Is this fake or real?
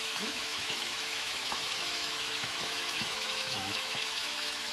fake